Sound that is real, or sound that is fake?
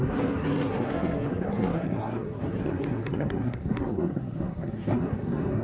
fake